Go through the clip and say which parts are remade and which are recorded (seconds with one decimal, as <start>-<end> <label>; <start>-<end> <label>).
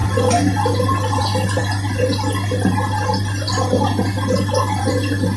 0.0-5.4 recorded